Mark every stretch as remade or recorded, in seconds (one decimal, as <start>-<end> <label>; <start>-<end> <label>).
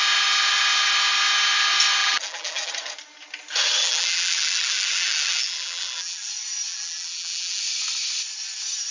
0.0-2.0 recorded; 2.0-2.7 remade; 2.7-3.8 recorded; 3.8-6.3 remade; 6.3-6.7 recorded; 6.7-7.6 remade; 7.6-8.9 recorded